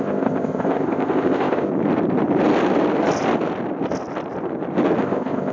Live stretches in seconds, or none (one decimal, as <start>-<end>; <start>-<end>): 1.7-5.0